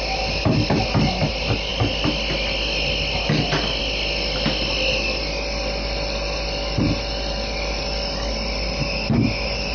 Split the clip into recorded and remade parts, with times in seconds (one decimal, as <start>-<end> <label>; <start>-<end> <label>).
0.0-9.7 recorded